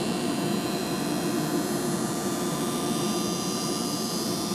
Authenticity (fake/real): fake